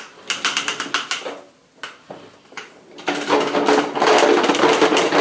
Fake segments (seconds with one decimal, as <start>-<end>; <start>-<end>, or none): none

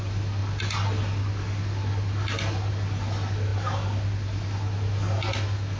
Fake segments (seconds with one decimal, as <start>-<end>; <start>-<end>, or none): none

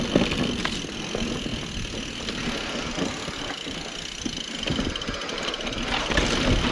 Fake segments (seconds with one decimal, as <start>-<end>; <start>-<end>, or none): none

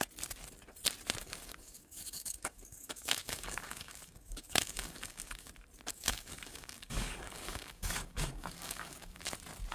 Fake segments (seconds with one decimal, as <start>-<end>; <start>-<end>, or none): 1.2-5.5; 5.9-9.2

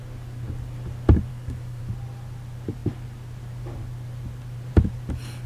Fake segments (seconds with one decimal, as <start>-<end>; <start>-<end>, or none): 1.3-1.8

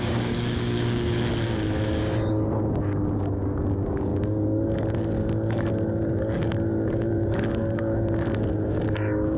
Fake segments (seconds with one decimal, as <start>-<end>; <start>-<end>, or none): 0.0-1.3; 2.0-9.4

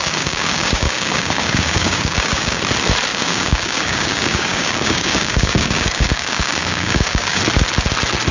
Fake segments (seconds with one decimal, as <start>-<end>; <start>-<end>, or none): 0.0-2.6; 3.1-7.4

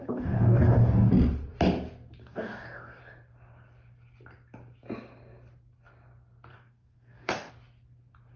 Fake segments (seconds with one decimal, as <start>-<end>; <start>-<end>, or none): 0.0-1.1; 2.2-3.0; 6.5-7.5